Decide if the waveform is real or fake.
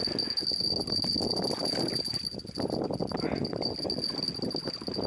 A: real